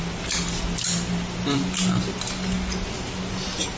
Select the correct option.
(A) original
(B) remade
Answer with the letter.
A